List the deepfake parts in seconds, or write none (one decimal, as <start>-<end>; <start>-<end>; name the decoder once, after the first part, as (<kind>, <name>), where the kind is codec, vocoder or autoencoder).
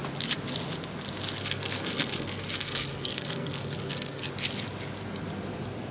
1.4-4.3 (codec, SNAC)